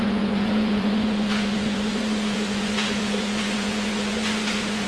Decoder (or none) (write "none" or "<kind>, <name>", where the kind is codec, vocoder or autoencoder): vocoder, Vocos